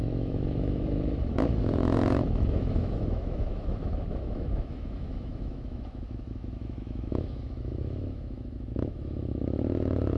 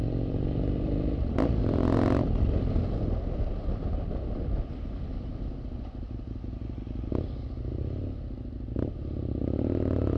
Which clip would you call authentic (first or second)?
second